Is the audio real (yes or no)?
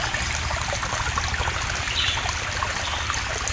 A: yes